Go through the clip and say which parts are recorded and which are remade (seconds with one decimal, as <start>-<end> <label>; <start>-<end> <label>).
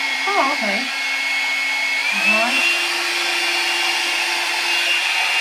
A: 0.0-0.6 remade; 0.6-5.4 recorded